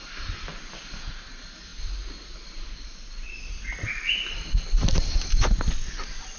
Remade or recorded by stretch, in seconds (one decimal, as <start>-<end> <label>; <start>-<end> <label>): 0.0-6.4 recorded